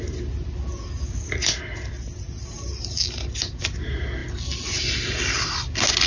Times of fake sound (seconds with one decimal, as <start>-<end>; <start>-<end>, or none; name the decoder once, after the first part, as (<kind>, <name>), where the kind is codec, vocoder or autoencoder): none